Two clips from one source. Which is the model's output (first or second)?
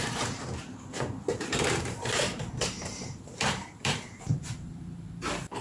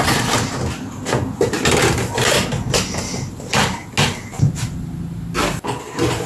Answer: first